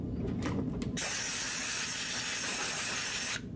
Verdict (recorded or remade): recorded